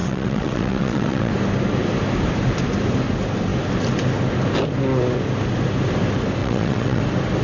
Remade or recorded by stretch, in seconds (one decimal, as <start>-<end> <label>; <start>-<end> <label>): 0.0-1.3 remade; 1.3-6.4 recorded; 6.4-7.0 remade; 7.0-7.4 recorded